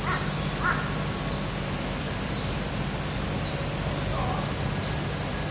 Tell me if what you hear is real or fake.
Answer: real